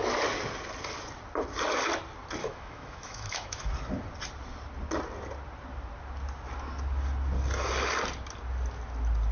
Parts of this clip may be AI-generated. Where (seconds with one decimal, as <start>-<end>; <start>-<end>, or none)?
2.4-3.7